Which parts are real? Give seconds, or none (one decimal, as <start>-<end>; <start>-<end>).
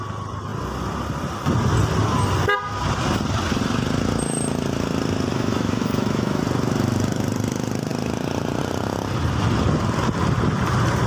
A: 0.0-5.3; 6.4-11.1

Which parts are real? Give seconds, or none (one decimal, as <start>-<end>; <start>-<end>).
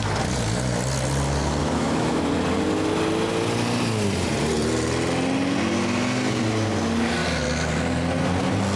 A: 0.0-1.6; 2.3-8.8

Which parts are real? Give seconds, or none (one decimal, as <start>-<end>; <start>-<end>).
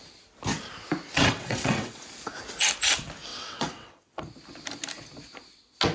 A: 0.0-1.1; 2.0-3.3; 4.2-5.9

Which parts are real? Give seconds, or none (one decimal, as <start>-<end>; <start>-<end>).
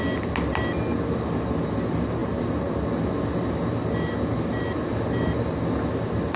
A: 0.0-6.4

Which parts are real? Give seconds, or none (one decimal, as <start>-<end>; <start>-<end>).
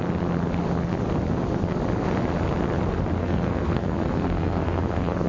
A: 0.0-3.2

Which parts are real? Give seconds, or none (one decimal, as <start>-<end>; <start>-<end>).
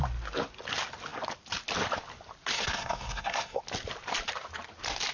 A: 0.0-2.5; 3.6-5.1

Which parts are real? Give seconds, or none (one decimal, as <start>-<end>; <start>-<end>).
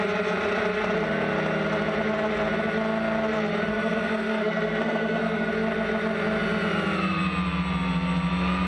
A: 0.0-3.7; 5.5-8.7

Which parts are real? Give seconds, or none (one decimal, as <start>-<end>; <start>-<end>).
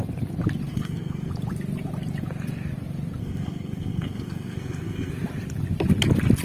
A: 0.0-0.7; 1.3-3.2; 5.1-6.4